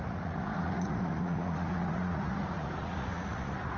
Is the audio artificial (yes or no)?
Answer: yes